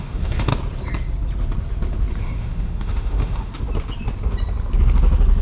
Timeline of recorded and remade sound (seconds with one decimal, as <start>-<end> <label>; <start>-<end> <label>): 0.0-0.5 remade; 0.5-2.2 recorded; 2.2-3.5 remade; 3.5-5.4 recorded

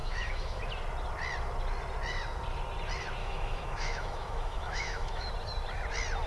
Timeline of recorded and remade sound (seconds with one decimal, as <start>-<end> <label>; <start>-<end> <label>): 0.0-0.6 remade; 0.6-3.2 recorded; 3.2-5.3 remade; 5.3-6.3 recorded

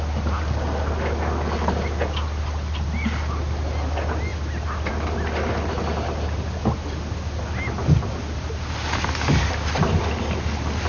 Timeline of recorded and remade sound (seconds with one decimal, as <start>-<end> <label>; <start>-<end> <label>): 0.0-10.9 recorded

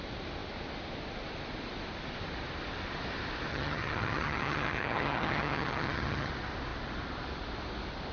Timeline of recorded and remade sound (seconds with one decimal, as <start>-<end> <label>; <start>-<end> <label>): 0.0-3.5 recorded; 3.5-6.3 remade; 6.3-8.1 recorded

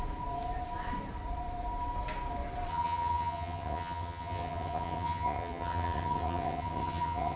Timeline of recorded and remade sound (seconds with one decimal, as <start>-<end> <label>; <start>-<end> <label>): 0.0-2.7 recorded; 2.7-7.4 remade

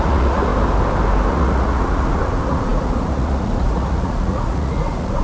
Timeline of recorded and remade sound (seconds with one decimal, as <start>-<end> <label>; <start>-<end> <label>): 0.0-0.5 remade; 0.5-1.3 recorded; 1.3-5.2 remade